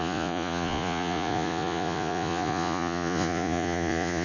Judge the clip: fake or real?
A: fake